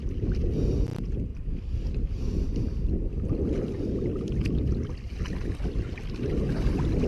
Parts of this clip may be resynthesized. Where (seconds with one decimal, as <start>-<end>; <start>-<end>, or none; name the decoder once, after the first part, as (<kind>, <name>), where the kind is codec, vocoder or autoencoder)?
1.3-5.5 (vocoder, BigVGAN v2)